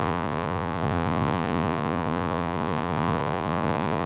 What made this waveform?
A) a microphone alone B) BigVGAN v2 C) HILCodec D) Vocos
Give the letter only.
D